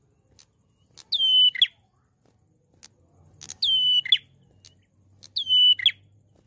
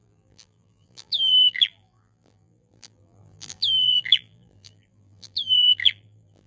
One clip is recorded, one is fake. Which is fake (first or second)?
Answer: second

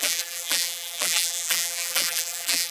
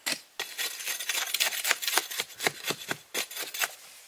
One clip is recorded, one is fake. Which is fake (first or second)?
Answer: first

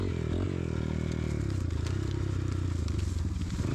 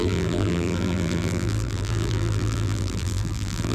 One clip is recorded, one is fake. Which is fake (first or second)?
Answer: second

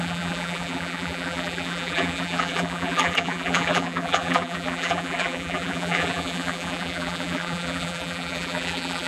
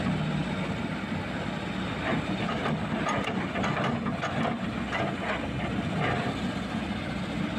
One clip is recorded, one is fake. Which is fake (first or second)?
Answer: first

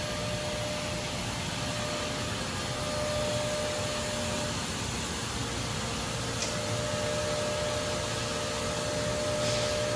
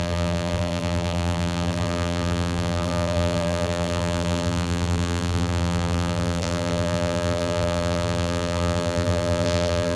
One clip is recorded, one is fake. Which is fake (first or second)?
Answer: second